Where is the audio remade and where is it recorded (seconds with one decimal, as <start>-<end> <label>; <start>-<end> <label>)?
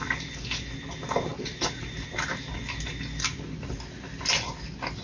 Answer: 0.0-5.0 recorded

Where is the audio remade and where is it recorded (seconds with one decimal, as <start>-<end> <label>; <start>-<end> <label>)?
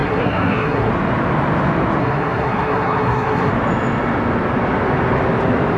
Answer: 0.0-0.9 remade; 0.9-2.0 recorded; 2.0-3.5 remade; 3.5-5.8 recorded